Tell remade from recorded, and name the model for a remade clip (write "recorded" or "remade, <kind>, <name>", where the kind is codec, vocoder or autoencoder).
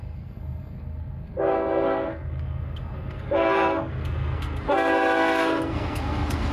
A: remade, codec, SNAC